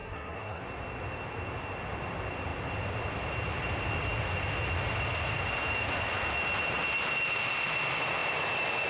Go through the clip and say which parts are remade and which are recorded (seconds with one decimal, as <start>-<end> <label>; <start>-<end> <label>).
0.0-0.6 remade; 0.6-8.9 recorded